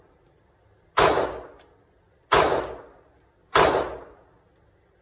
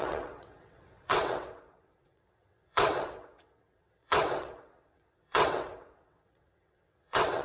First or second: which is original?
first